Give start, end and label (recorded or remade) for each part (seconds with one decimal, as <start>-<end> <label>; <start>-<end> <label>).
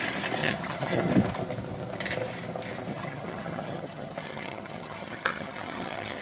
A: 0.0-0.4 recorded; 0.4-1.1 remade; 1.1-2.9 recorded; 2.9-6.2 remade